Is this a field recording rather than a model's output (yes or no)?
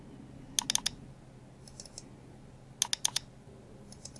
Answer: yes